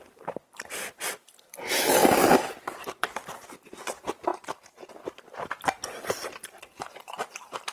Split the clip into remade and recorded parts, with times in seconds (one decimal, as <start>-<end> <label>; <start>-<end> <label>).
0.0-2.0 remade; 2.0-2.6 recorded; 2.6-7.7 remade